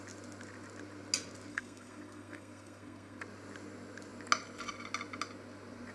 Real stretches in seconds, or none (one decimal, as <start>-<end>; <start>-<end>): 0.0-1.5; 3.2-5.9